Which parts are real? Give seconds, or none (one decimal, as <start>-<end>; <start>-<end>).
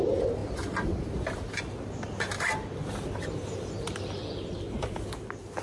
0.0-5.6